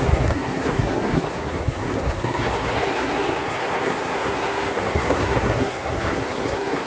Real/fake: fake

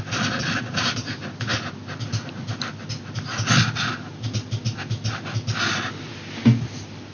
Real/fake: real